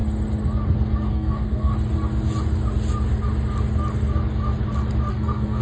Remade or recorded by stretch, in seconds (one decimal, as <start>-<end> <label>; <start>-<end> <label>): 0.0-1.1 recorded; 1.1-1.7 remade; 1.7-5.1 recorded; 5.1-5.6 remade